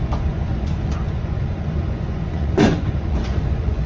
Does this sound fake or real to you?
fake